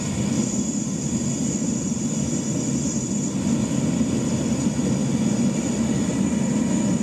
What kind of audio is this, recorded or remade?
recorded